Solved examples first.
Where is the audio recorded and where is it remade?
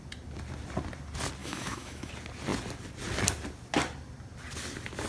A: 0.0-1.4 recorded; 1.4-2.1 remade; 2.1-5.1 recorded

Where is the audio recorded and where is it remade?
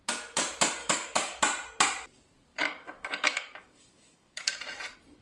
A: 0.0-0.8 recorded; 0.8-1.4 remade; 1.4-2.5 recorded; 2.5-4.5 remade; 4.5-5.2 recorded